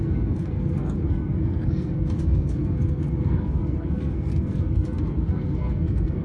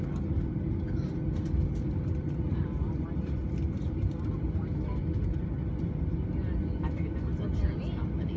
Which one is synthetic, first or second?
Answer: first